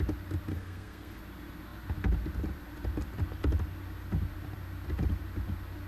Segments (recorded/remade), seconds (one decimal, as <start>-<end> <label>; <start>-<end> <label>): 0.0-0.5 recorded; 0.5-1.2 remade; 1.2-5.9 recorded